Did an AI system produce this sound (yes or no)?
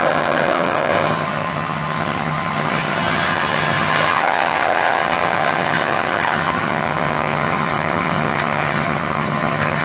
yes